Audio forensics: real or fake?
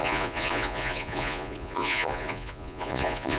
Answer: fake